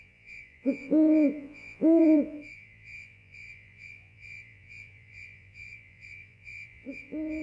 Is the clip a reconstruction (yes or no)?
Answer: yes